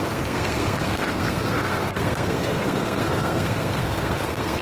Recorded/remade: remade